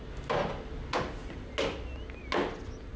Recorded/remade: recorded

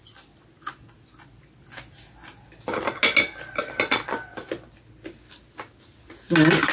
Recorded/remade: recorded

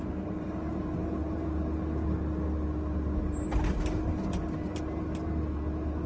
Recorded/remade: recorded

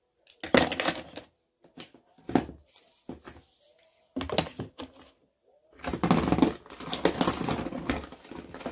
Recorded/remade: recorded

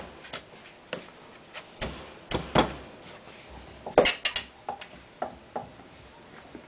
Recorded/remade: recorded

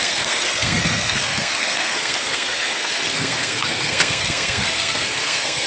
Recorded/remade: remade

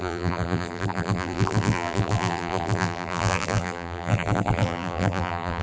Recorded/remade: remade